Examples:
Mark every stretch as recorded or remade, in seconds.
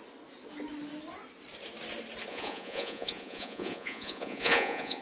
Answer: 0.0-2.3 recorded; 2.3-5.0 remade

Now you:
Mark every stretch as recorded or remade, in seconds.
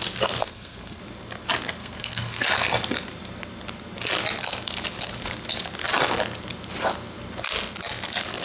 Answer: 0.0-0.4 recorded; 0.4-1.0 remade; 1.0-1.8 recorded; 1.8-2.4 remade; 2.4-8.4 recorded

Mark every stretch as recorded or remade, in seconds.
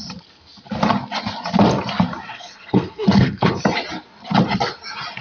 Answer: 0.0-2.3 recorded; 2.3-3.5 remade; 3.5-5.2 recorded